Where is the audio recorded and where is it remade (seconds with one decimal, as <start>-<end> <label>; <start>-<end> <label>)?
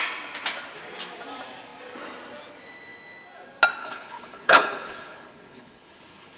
0.0-3.8 recorded; 3.8-6.4 remade